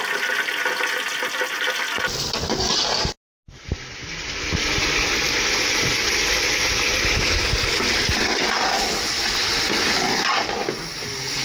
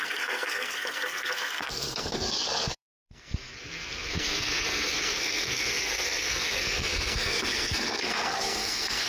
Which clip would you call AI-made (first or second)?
second